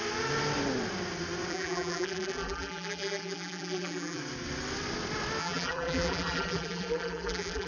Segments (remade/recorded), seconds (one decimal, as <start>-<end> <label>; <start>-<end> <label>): 0.0-1.5 recorded; 1.5-4.2 remade; 4.2-5.4 recorded; 5.4-7.7 remade